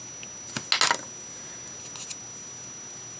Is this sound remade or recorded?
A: recorded